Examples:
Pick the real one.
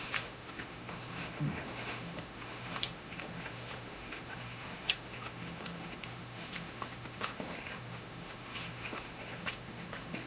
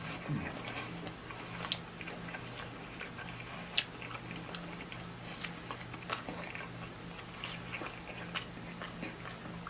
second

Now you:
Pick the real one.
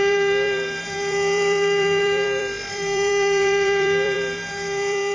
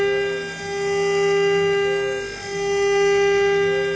second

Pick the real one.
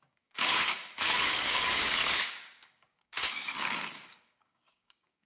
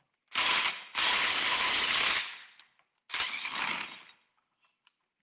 second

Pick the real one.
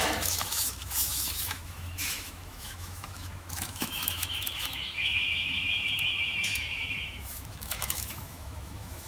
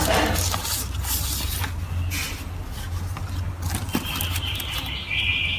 second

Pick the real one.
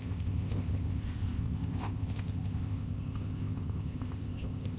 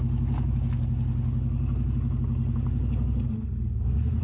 second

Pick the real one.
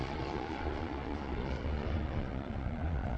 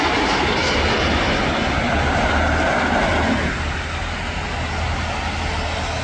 second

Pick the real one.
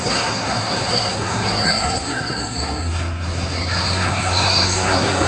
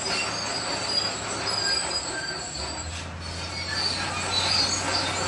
second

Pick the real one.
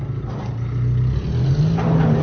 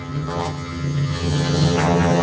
first